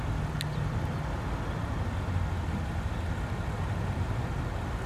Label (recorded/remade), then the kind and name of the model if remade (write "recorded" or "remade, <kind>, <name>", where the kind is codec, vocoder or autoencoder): recorded